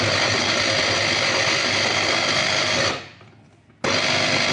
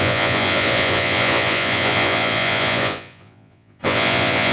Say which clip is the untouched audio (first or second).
first